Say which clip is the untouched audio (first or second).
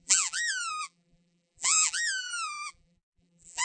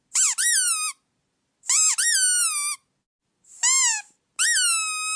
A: second